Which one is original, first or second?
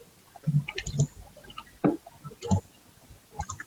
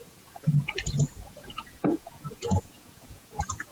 first